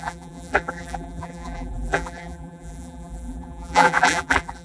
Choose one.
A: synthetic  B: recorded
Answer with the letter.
A